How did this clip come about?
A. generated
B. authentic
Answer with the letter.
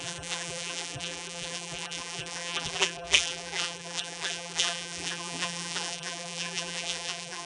A